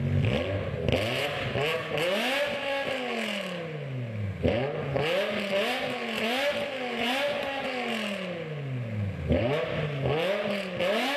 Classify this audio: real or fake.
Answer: real